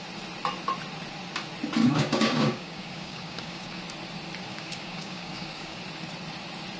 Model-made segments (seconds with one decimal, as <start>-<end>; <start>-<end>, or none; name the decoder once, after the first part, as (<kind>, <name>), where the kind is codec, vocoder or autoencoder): 1.8-3.8 (codec, DAC); 4.5-5.8